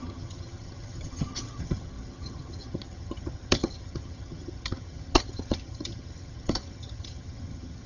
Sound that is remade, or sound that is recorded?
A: remade